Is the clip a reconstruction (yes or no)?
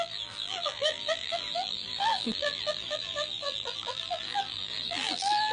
yes